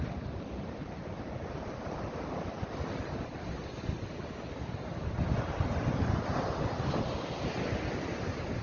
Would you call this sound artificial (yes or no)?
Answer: no